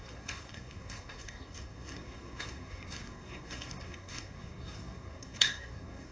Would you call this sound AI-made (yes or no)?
yes